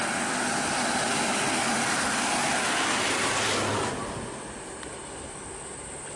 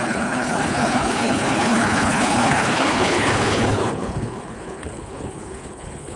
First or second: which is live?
first